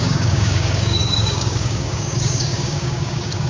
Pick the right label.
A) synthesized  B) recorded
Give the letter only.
A